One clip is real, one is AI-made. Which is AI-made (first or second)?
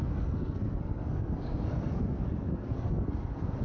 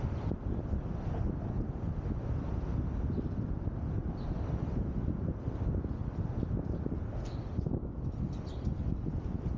first